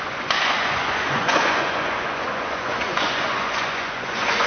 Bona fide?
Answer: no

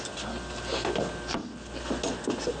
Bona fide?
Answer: yes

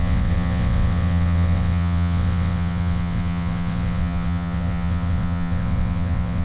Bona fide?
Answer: no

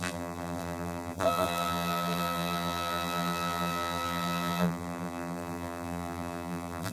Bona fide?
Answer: no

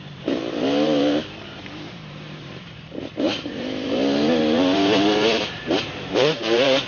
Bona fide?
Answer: no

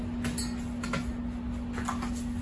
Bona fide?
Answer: yes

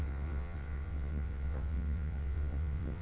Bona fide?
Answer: no